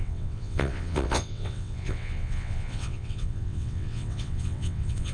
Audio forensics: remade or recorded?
remade